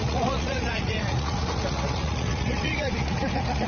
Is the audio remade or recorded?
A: remade